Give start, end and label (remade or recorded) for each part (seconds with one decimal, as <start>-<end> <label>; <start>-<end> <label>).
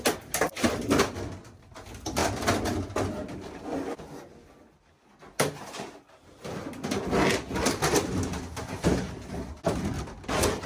0.0-10.7 recorded